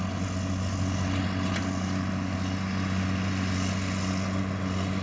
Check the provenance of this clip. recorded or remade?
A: recorded